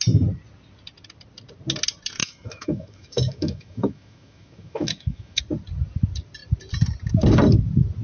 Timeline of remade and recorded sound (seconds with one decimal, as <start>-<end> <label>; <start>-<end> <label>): 0.0-2.2 recorded; 2.2-5.4 remade; 5.4-8.0 recorded